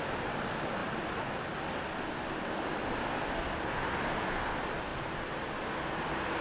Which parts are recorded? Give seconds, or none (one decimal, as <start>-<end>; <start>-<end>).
0.0-6.4